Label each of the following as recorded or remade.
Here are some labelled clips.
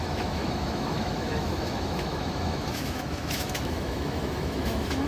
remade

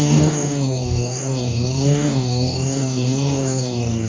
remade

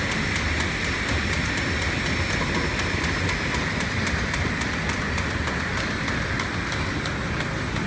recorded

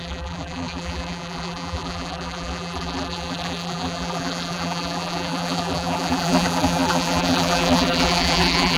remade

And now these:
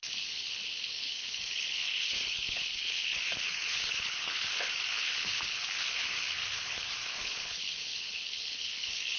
remade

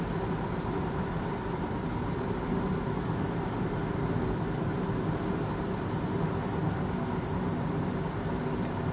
recorded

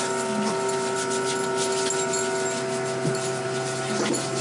recorded